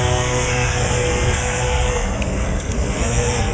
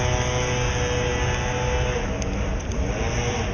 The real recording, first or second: second